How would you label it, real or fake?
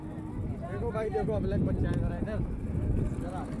real